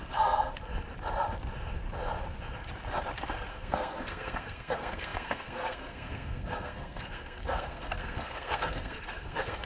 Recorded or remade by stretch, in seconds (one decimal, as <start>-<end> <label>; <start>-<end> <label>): 0.0-0.5 remade; 0.5-3.5 recorded; 3.5-9.7 remade